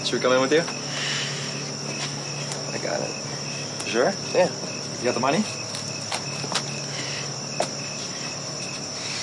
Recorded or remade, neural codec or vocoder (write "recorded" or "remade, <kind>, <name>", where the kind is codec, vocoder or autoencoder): recorded